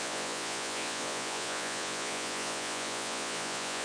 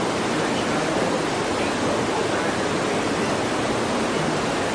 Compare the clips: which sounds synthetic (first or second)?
first